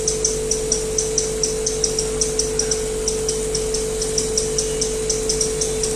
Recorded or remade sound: recorded